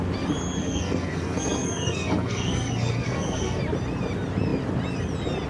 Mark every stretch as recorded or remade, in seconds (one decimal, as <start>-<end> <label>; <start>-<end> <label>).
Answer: 0.0-0.6 recorded; 0.6-3.6 remade; 3.6-5.5 recorded